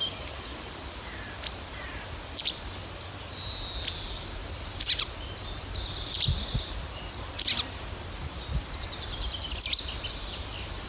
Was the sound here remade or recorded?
recorded